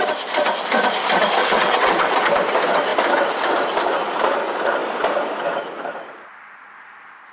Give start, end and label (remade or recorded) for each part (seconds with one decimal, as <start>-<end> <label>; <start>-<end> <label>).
0.0-1.4 recorded; 1.4-2.3 remade; 2.3-7.3 recorded